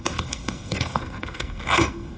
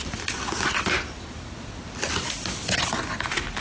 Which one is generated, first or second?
first